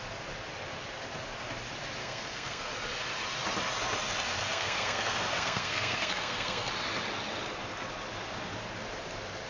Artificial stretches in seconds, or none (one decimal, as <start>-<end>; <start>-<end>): 2.0-2.7; 4.4-6.7